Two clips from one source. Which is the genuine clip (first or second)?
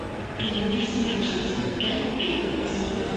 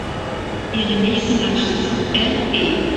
second